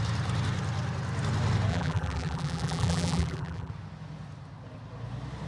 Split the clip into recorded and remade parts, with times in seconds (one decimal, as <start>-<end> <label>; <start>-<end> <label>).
0.0-1.7 recorded; 1.7-3.7 remade; 3.7-5.5 recorded